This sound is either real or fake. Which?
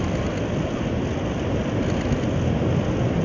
real